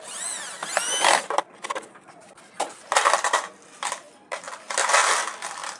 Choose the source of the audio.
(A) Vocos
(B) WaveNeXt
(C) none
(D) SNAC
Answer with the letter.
C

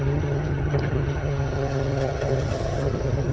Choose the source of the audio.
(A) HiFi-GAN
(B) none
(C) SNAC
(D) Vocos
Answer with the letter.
A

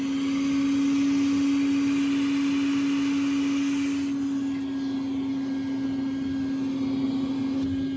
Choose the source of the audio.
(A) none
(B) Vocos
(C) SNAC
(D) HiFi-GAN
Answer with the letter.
A